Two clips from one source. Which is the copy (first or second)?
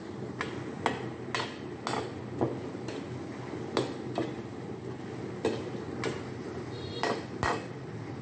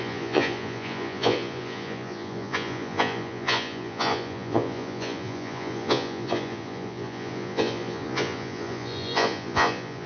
second